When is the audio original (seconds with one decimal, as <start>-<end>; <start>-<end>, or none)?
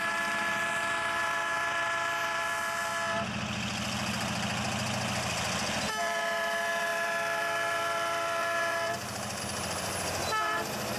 2.9-5.9